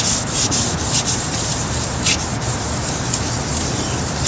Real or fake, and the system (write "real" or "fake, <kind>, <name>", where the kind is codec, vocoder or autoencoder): real